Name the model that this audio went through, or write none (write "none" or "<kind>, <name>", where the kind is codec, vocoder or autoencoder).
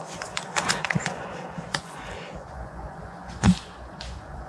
vocoder, Vocos